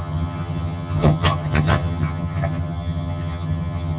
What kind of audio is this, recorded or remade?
remade